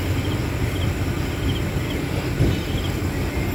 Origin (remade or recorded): recorded